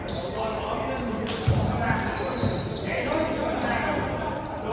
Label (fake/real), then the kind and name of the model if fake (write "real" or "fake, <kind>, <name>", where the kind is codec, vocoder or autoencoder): real